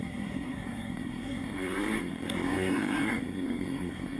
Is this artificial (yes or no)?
yes